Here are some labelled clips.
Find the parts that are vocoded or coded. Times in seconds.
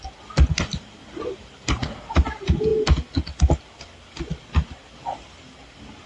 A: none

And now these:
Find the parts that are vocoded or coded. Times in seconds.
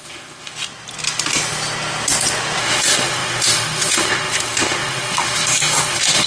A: 0.0-0.5 (autoencoder, DAC-VAE); 2.6-6.3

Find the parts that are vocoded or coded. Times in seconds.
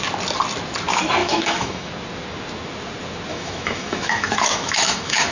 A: 1.2-1.9 (autoencoder, DAC-VAE); 3.3-5.3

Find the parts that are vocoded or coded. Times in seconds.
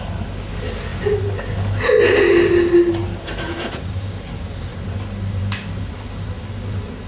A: none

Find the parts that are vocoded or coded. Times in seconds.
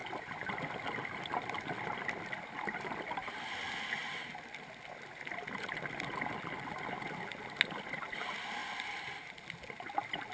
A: none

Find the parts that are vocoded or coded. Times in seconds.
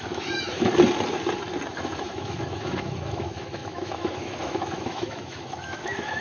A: 0.0-0.7 (autoencoder, DAC-VAE); 1.7-6.2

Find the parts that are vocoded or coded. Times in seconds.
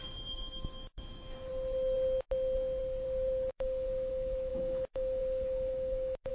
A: 0.0-1.5 (autoencoder, DAC-VAE); 3.5-6.3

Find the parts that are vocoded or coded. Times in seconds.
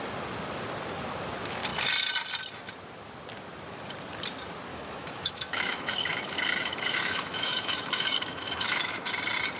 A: 4.7-9.1 (autoencoder, DAC-VAE)